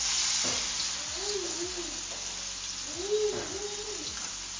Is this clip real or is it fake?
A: real